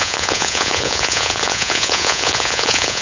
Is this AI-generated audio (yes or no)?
yes